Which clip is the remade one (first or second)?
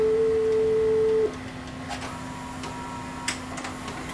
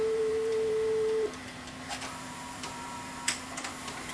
second